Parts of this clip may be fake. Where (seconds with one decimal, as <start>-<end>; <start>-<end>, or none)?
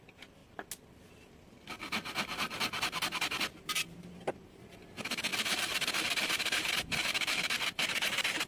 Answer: 0.0-0.4; 3.6-8.5